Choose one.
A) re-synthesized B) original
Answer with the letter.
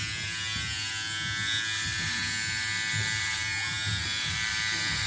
B